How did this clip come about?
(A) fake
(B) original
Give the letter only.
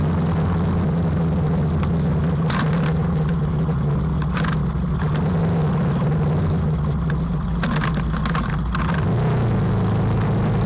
B